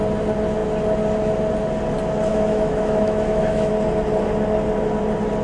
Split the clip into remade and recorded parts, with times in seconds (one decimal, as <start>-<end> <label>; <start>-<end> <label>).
0.0-2.3 recorded; 2.3-3.7 remade; 3.7-5.4 recorded